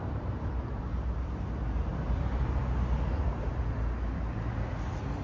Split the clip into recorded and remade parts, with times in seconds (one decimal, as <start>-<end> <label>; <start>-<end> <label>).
0.0-0.8 remade; 0.8-5.2 recorded